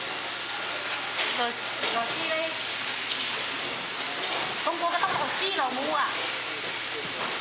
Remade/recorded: recorded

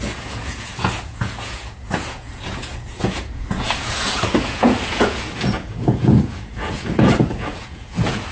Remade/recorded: remade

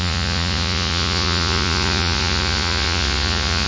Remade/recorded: remade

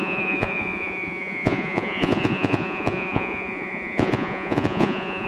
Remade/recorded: remade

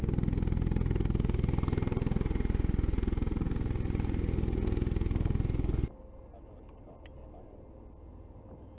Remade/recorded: recorded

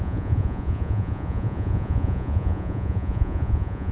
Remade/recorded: remade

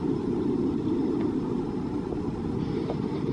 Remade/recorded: recorded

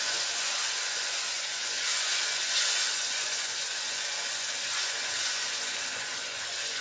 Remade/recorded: remade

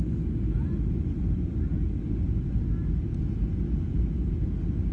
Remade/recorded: recorded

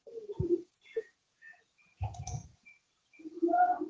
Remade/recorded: remade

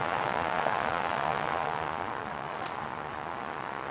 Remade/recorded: remade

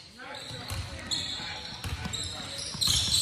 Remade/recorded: recorded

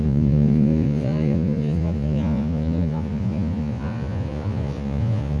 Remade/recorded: remade